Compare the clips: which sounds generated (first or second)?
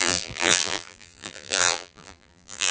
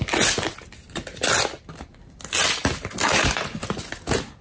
first